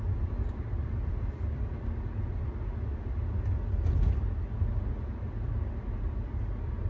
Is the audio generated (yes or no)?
no